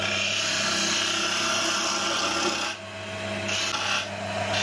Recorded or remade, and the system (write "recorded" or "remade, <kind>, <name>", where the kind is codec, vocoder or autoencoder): recorded